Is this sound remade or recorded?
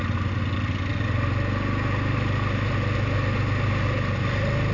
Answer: recorded